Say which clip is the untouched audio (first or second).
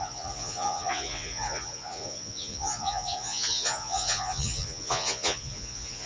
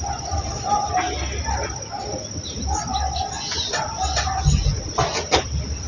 second